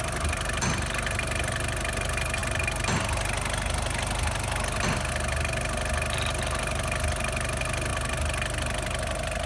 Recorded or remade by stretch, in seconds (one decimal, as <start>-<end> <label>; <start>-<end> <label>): 0.0-9.5 recorded